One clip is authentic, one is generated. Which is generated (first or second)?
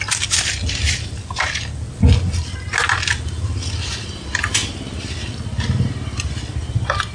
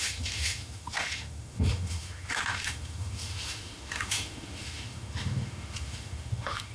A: second